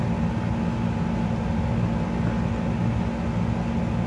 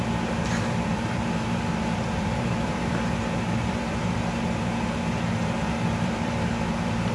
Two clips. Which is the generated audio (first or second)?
second